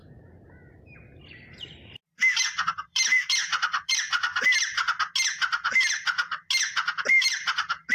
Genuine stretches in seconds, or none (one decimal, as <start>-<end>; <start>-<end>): 0.0-2.4; 4.3-6.9